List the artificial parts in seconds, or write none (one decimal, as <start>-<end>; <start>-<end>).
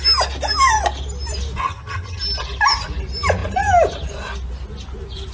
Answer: 1.6-2.2